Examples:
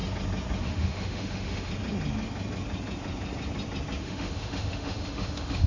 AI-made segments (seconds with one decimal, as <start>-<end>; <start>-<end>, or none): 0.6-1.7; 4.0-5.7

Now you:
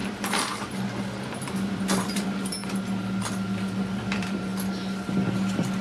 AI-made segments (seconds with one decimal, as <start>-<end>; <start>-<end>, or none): 1.2-2.6; 3.9-4.5

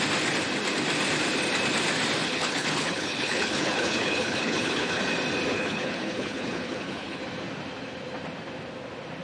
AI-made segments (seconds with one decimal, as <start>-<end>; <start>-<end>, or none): 2.2-5.0; 5.5-7.2

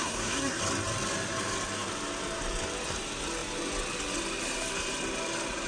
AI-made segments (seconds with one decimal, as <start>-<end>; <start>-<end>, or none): 0.0-0.6